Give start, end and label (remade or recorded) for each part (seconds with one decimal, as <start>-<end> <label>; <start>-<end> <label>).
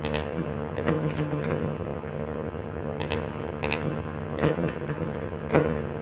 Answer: 0.0-6.0 remade